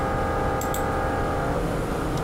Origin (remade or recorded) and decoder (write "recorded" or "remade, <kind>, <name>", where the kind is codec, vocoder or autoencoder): recorded